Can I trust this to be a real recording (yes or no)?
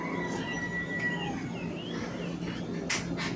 yes